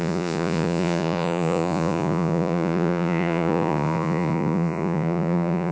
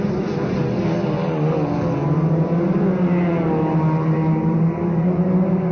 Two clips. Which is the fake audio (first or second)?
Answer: first